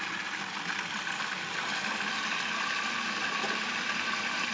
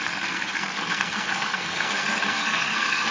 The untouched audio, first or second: first